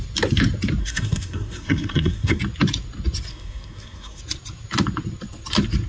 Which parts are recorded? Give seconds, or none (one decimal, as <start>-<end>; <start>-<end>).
0.0-0.8; 2.4-3.3; 4.2-5.9